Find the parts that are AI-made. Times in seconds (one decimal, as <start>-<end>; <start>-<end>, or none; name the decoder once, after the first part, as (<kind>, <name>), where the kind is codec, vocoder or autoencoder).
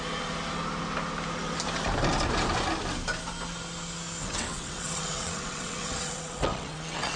4.2-7.2 (vocoder, WaveNeXt)